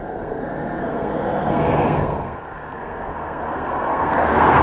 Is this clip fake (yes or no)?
yes